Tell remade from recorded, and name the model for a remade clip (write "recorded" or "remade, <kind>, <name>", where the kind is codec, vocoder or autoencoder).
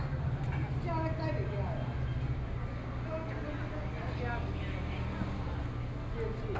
recorded